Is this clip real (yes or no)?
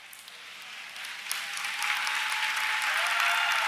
yes